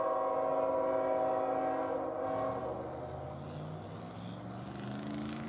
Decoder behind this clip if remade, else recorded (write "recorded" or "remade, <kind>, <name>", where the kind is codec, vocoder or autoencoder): recorded